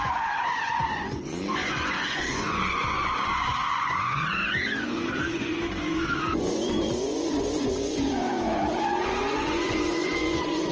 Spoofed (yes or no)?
yes